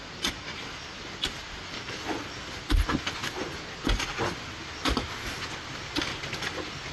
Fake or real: real